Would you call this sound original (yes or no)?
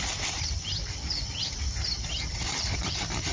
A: no